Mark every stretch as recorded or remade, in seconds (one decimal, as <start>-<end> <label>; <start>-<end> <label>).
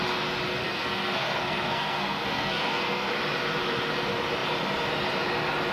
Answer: 0.0-0.6 recorded; 0.6-3.1 remade; 3.1-5.7 recorded